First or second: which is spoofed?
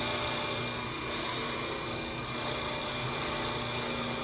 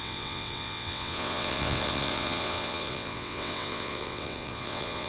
second